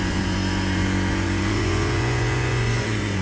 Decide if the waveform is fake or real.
fake